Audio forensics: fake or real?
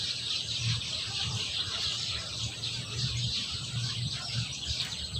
fake